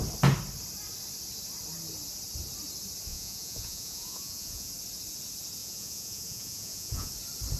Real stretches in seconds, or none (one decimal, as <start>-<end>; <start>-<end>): 0.0-3.1; 4.7-5.6; 7.1-7.6